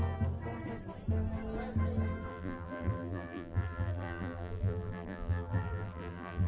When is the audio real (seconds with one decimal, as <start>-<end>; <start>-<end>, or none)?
0.0-2.3